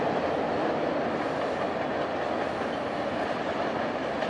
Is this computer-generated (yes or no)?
no